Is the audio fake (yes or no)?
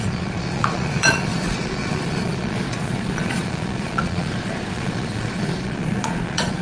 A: yes